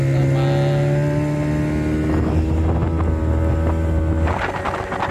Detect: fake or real real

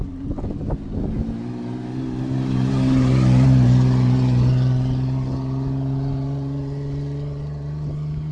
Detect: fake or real real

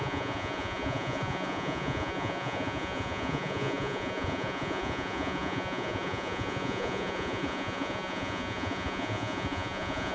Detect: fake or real fake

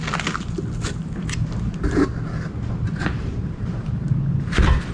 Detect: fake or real real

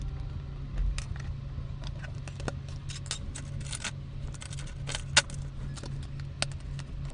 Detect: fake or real real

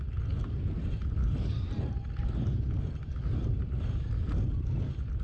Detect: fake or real real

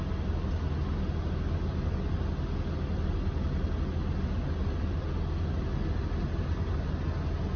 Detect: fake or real real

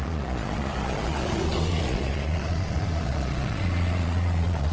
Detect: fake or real fake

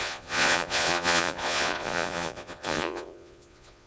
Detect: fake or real fake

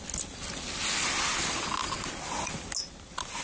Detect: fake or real real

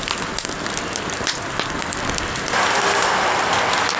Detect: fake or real real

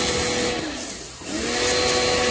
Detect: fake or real real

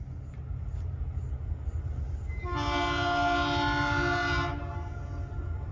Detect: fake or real real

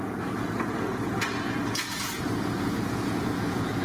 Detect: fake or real fake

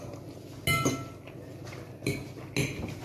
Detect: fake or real real